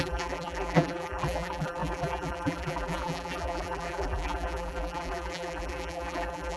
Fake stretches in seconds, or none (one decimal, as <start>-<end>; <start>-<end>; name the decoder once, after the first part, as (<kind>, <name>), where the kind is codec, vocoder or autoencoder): 0.0-6.6 (vocoder, BigVGAN v2)